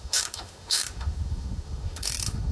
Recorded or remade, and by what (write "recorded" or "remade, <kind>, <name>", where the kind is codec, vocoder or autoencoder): remade, autoencoder, DAC-VAE